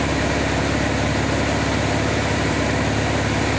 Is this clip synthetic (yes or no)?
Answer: no